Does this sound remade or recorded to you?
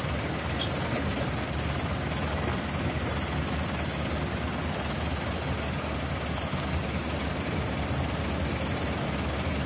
recorded